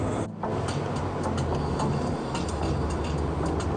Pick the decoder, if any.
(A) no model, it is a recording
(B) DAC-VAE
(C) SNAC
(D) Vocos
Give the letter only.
A